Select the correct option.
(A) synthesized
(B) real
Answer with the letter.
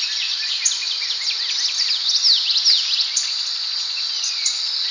B